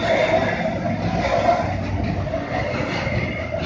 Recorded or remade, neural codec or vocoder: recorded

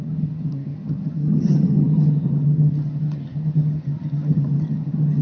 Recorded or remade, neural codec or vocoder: remade, vocoder, HiFi-GAN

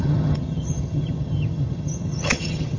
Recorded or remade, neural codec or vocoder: remade, vocoder, HiFi-GAN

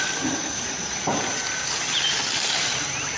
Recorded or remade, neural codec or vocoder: recorded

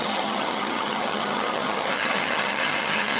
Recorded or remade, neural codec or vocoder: remade, vocoder, HiFi-GAN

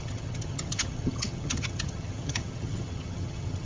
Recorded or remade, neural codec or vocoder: remade, vocoder, HiFi-GAN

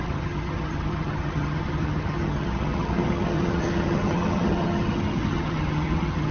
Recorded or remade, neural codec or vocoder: remade, vocoder, HiFi-GAN